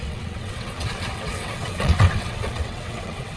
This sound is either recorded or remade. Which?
remade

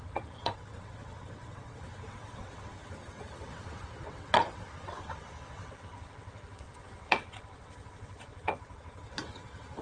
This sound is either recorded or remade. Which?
remade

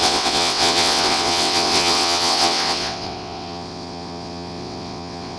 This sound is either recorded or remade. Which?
remade